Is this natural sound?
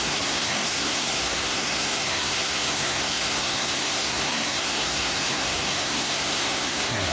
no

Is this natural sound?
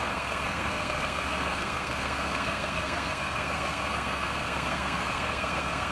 no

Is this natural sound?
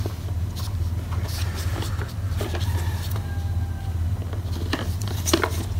yes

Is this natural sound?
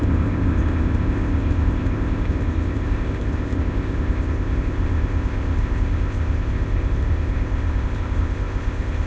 no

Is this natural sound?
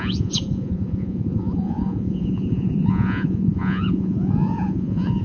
no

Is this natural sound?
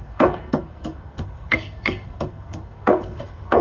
no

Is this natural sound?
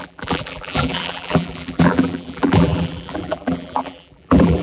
no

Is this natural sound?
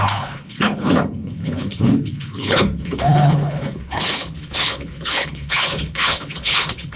no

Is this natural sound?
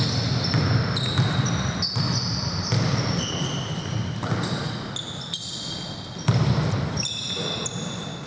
yes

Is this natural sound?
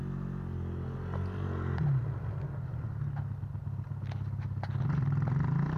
yes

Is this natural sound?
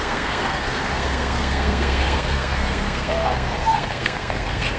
no